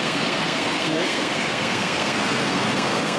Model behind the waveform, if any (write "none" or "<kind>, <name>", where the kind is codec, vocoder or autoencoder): codec, SNAC